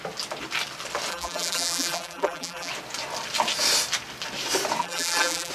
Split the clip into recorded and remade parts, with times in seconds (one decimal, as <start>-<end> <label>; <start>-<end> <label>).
0.0-1.1 recorded; 1.1-2.7 remade; 2.7-4.8 recorded; 4.8-5.5 remade